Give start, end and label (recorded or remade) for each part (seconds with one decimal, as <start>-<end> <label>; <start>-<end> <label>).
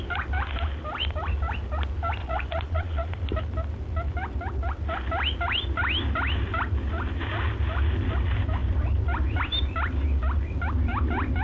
0.0-2.2 recorded; 2.2-3.1 remade; 3.1-11.4 recorded